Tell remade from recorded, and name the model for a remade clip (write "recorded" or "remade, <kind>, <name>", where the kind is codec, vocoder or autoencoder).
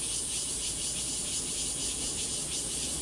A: remade, vocoder, Vocos